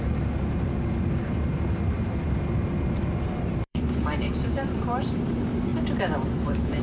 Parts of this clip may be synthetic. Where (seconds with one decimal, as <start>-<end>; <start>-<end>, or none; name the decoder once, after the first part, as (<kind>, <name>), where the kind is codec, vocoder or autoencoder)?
0.0-6.8 (vocoder, BigVGAN v2)